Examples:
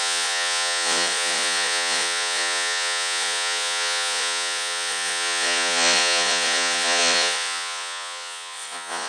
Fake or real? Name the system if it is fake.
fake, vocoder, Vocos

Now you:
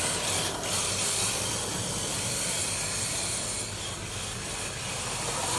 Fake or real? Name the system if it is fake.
real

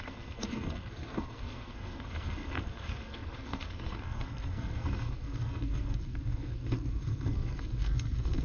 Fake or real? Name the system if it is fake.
fake, codec, SNAC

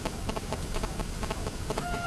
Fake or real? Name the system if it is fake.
fake, codec, DAC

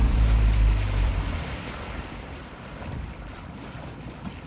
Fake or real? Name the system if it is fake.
fake, vocoder, BigVGAN v2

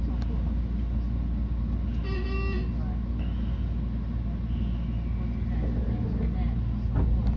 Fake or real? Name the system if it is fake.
real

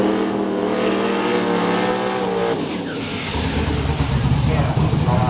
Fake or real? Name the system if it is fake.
real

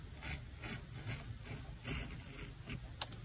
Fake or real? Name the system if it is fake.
real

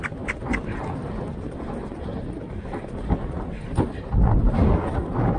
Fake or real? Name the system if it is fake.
real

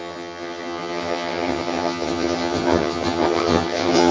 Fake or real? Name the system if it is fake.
fake, vocoder, HiFi-GAN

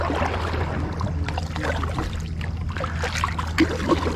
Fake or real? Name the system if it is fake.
real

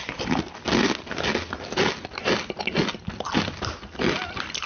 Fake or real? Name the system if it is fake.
real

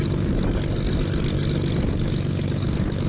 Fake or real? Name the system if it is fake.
real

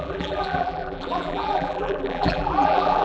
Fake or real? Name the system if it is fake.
fake, vocoder, BigVGAN v2